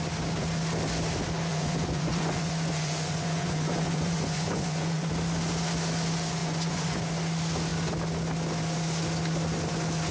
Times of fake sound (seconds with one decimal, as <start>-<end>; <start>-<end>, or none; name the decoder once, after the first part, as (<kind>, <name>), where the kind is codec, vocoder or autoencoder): 1.5-5.1 (vocoder, Vocos); 6.4-7.0

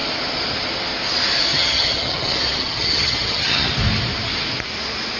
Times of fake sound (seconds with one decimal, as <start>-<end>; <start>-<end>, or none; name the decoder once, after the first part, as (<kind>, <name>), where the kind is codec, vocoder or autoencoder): 1.5-3.7 (vocoder, HiFi-GAN)

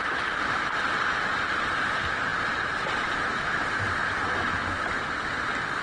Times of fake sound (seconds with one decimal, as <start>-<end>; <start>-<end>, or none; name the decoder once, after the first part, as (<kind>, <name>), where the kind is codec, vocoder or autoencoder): none

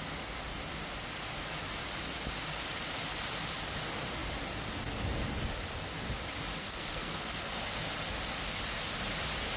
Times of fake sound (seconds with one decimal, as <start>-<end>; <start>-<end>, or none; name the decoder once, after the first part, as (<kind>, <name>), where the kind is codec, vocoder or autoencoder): 6.6-7.6 (codec, SNAC)

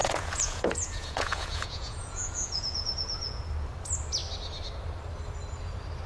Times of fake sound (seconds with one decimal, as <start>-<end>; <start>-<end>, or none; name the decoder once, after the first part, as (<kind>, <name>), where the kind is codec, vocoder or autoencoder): 0.0-3.4 (vocoder, Vocos)

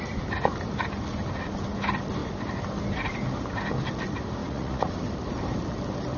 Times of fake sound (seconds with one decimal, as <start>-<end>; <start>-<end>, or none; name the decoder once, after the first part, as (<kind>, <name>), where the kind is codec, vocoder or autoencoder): 4.4-4.9 (vocoder, Vocos)

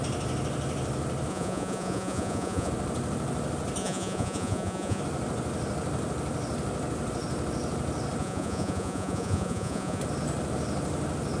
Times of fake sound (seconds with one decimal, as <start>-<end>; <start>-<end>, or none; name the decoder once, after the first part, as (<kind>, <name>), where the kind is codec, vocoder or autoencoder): 1.3-2.7 (vocoder, Vocos); 3.8-5.0; 8.2-10.0